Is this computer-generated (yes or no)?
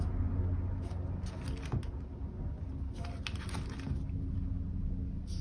no